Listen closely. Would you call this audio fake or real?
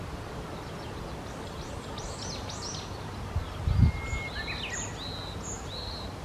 real